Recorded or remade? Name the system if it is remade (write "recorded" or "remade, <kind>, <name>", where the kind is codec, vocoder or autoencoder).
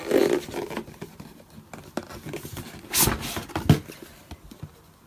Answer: recorded